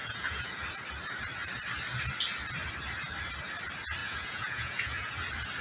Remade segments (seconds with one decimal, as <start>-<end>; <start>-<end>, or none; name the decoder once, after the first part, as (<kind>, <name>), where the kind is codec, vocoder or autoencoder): 0.0-0.5 (vocoder, Vocos); 4.0-5.1